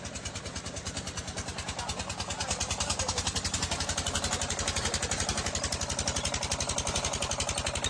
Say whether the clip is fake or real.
real